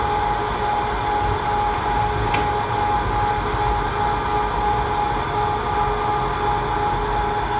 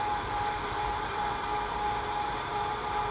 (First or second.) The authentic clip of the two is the first